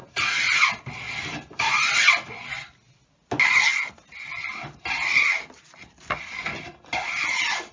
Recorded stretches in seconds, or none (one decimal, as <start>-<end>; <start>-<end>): 0.0-7.7